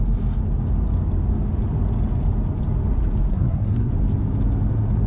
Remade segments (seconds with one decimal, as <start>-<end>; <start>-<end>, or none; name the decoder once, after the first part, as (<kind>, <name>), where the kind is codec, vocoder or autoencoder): 3.3-3.9 (codec, SNAC)